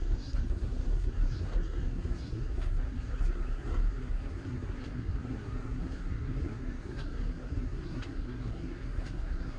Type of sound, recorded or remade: remade